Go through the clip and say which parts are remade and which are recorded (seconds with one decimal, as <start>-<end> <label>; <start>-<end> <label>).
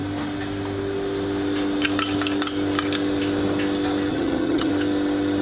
0.0-4.1 recorded; 4.1-4.7 remade; 4.7-5.4 recorded